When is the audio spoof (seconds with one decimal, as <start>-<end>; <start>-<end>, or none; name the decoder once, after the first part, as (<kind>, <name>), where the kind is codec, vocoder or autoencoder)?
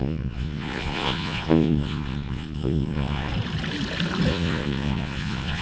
0.0-3.3 (vocoder, Vocos); 4.3-5.6